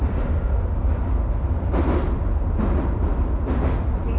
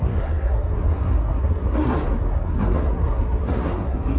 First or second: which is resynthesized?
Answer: second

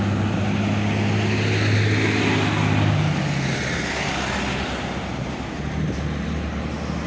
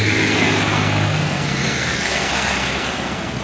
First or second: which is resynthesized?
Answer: second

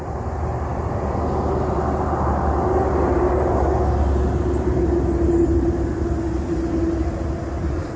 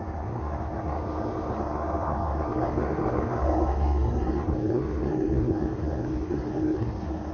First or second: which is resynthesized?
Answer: second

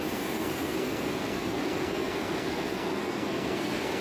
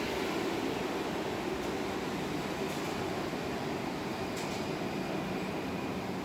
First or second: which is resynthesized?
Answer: first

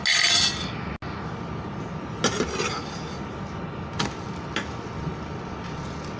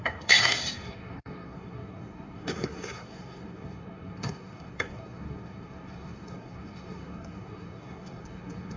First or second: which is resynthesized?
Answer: second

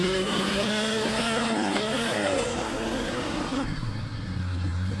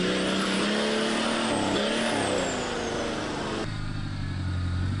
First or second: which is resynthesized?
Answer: first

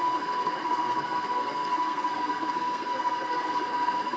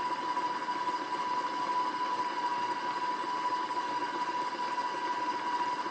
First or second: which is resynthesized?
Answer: first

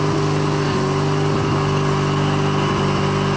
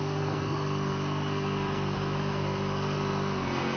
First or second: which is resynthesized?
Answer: second